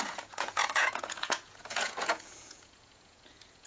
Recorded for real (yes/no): no